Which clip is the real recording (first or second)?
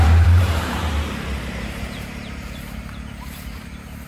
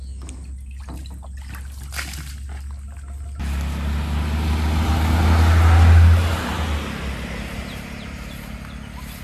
second